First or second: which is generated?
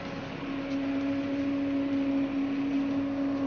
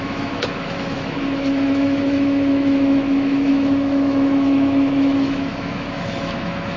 second